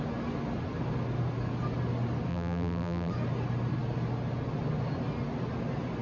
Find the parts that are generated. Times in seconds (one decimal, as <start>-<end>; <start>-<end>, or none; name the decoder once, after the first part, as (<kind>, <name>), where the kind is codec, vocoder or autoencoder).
2.3-3.1 (vocoder, BigVGAN v2)